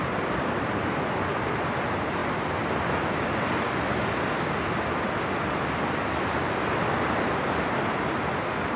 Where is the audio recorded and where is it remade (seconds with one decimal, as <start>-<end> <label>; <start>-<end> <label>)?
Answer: 0.0-8.8 recorded